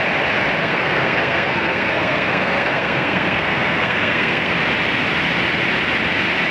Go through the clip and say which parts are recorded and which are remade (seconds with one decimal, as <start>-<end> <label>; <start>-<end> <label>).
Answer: 0.0-0.6 recorded; 0.6-4.5 remade; 4.5-6.5 recorded